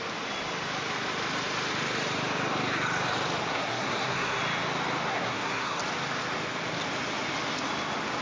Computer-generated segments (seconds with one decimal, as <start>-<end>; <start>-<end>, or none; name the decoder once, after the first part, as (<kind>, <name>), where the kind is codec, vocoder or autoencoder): 3.5-4.4 (codec, SNAC); 5.1-5.8